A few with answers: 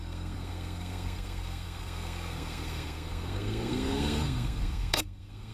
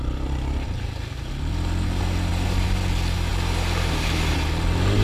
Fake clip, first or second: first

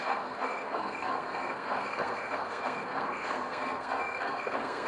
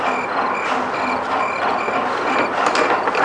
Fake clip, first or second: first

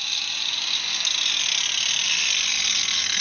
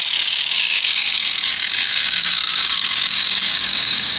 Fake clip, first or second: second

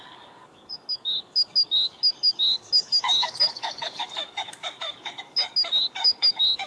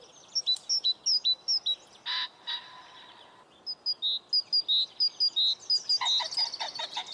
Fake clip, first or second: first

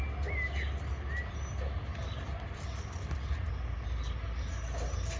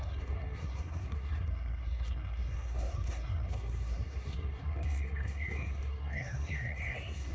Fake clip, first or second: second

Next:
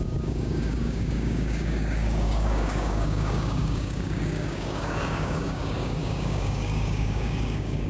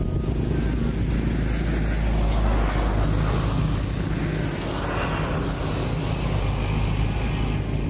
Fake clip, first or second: first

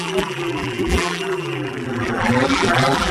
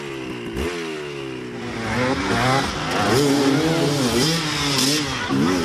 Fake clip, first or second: first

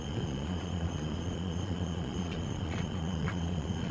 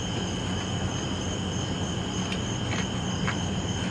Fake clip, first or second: first